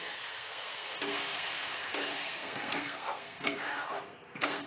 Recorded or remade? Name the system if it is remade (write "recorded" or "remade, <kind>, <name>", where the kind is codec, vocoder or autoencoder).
remade, codec, SNAC